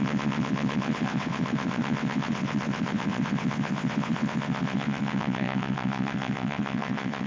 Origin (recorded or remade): remade